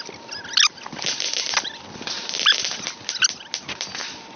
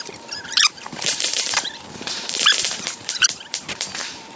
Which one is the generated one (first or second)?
second